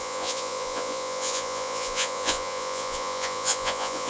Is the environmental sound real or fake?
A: fake